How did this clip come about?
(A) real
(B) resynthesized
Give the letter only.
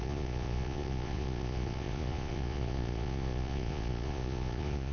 B